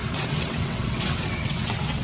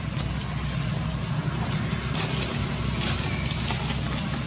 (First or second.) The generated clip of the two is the first